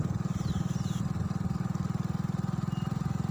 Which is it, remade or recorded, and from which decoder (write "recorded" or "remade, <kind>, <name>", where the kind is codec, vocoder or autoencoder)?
recorded